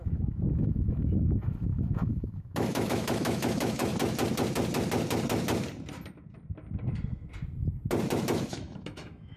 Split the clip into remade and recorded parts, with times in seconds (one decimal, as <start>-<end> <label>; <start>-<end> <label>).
0.0-3.9 remade; 3.9-8.5 recorded; 8.5-9.4 remade